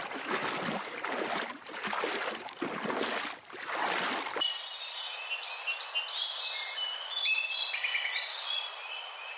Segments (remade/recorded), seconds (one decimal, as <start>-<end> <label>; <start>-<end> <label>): 0.0-9.4 recorded